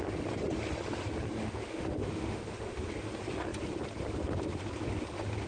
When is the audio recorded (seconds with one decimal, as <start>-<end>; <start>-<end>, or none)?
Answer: 0.0-1.4; 2.9-5.5